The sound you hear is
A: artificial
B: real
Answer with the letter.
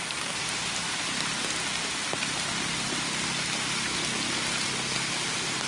B